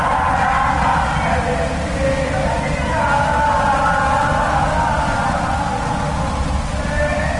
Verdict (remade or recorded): recorded